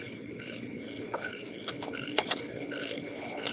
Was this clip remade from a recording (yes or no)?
yes